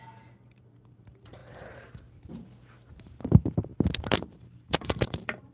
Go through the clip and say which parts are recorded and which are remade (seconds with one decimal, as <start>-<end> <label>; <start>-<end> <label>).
0.0-1.4 remade; 1.4-2.9 recorded; 2.9-3.7 remade; 3.7-4.2 recorded; 4.2-5.5 remade